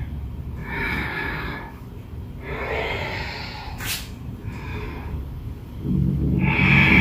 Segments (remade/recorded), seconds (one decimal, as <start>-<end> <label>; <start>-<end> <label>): 0.0-0.6 recorded; 0.6-1.9 remade; 1.9-4.7 recorded; 4.7-6.4 remade; 6.4-7.0 recorded